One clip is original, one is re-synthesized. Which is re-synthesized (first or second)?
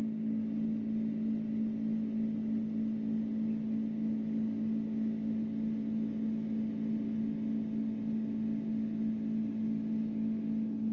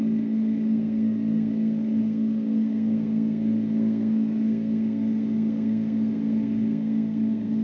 second